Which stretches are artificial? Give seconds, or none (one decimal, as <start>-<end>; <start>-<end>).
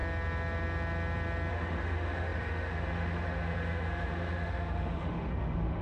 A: 1.5-5.8